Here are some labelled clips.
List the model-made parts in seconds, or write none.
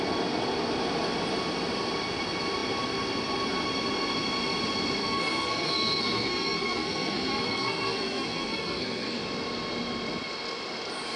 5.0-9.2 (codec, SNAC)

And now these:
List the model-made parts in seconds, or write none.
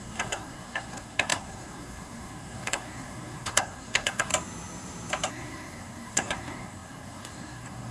0.0-4.3 (codec, SNAC); 5.3-7.9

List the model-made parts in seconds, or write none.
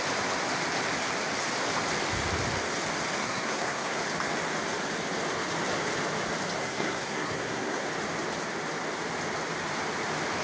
3.2-4.0 (codec, SNAC); 6.6-7.9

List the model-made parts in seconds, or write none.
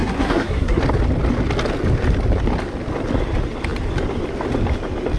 0.0-0.8 (codec, SNAC)